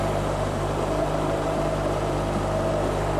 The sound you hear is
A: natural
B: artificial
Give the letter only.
B